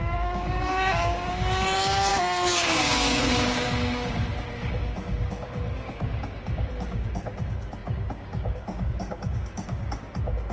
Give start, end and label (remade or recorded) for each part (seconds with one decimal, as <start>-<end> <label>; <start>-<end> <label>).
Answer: 0.0-10.5 remade